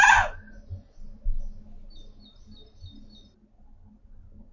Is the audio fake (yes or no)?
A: no